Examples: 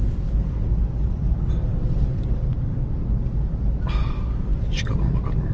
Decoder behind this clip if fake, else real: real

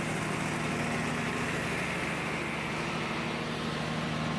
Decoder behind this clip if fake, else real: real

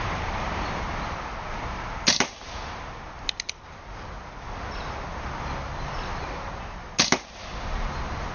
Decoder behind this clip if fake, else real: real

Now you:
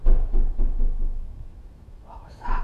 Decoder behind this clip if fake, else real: fake, autoencoder, DAC-VAE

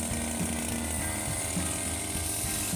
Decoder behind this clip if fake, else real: real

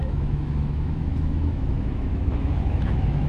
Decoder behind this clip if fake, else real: fake, autoencoder, DAC-VAE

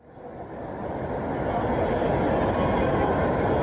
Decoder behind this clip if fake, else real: real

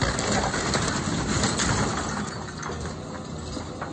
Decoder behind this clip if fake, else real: real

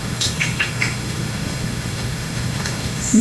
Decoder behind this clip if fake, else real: fake, autoencoder, DAC-VAE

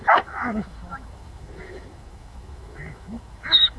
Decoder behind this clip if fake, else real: fake, autoencoder, DAC-VAE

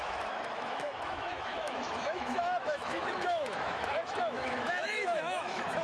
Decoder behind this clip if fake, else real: fake, autoencoder, DAC-VAE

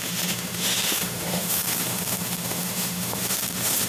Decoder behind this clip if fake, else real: fake, autoencoder, DAC-VAE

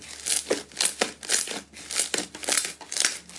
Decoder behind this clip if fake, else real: real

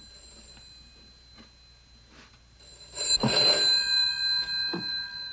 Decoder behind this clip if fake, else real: real